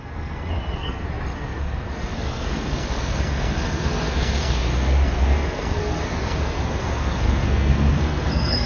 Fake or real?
fake